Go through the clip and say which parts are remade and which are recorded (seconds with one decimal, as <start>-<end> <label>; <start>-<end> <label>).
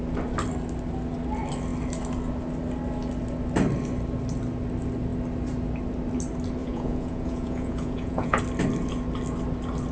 0.0-6.6 recorded; 6.6-8.4 remade; 8.4-9.9 recorded